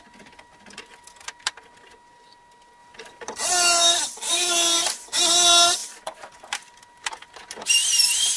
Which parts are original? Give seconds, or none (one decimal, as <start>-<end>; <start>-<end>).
0.0-2.8; 3.4-5.8